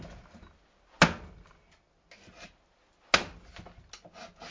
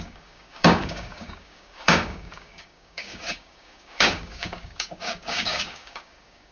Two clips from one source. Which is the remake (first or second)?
second